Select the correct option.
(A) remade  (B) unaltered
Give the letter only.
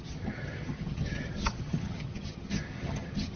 A